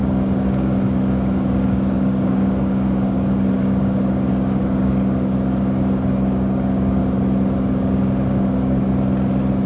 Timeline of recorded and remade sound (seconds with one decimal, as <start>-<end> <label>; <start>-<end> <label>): 0.0-7.0 remade; 7.0-7.7 recorded; 7.7-8.9 remade; 8.9-9.7 recorded